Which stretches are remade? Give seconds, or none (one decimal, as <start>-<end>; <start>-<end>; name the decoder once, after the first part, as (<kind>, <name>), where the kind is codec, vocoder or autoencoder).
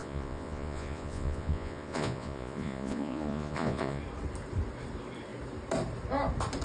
0.0-4.0 (vocoder, Vocos)